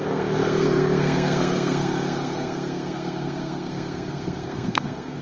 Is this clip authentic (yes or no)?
no